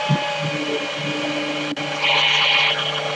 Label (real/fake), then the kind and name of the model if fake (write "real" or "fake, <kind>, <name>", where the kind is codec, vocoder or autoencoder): real